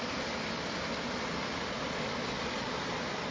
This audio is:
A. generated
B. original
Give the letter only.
B